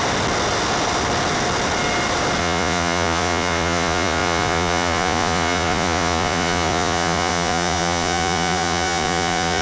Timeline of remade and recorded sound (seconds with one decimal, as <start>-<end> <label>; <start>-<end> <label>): 0.0-2.4 recorded; 2.4-9.6 remade